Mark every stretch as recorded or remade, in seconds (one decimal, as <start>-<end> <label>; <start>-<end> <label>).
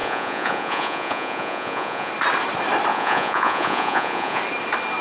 0.0-2.1 remade; 2.1-2.9 recorded; 2.9-4.4 remade; 4.4-5.0 recorded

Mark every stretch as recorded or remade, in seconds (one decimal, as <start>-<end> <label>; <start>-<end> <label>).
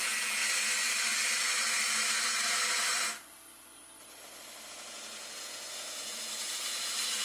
0.0-0.4 remade; 0.4-4.7 recorded; 4.7-7.2 remade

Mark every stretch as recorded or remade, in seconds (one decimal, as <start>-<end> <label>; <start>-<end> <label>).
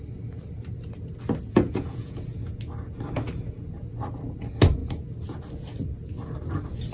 0.0-1.5 recorded; 1.5-2.6 remade; 2.6-6.9 recorded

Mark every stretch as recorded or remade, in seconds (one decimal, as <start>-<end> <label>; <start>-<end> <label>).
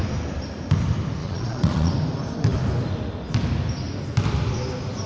0.0-1.2 recorded; 1.2-1.9 remade; 1.9-5.1 recorded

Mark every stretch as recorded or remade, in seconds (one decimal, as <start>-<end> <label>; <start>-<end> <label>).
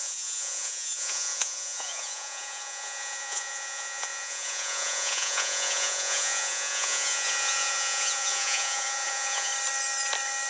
0.0-9.5 remade; 9.5-10.5 recorded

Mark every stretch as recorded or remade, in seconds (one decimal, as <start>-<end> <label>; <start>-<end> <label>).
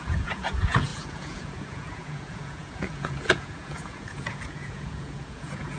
0.0-5.8 remade